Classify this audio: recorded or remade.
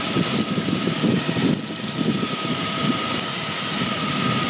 recorded